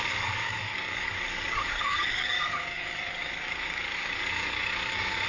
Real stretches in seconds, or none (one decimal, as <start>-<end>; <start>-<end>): none